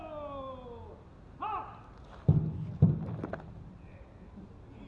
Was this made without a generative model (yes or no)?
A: yes